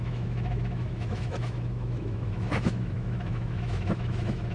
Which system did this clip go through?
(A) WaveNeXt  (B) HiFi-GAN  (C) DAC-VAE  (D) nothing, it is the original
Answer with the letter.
C